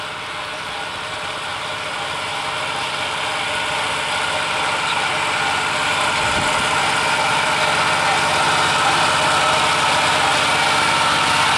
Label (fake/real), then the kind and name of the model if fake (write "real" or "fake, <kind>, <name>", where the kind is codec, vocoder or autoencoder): real